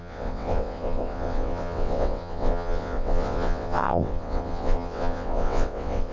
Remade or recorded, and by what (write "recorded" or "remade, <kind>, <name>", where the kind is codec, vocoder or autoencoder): remade, vocoder, WaveNeXt